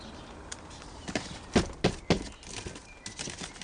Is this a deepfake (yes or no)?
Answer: no